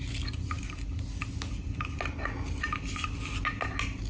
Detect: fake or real real